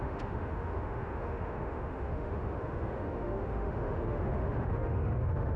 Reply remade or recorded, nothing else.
remade